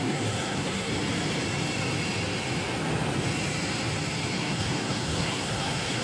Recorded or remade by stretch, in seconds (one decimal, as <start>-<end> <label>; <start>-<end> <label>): 0.0-0.9 remade; 0.9-4.3 recorded; 4.3-6.0 remade